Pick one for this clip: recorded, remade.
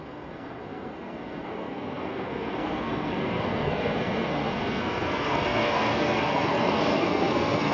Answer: remade